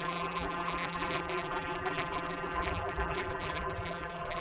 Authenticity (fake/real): fake